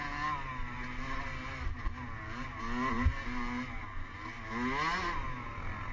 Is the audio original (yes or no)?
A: yes